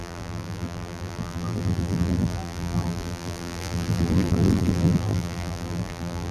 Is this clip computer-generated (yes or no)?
yes